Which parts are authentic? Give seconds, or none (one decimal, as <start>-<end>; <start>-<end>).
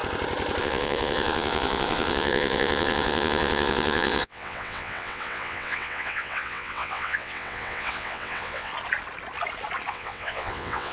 0.0-0.6; 8.7-9.9